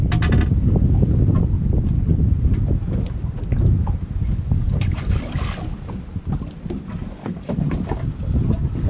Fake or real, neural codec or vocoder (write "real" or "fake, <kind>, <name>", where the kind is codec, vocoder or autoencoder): real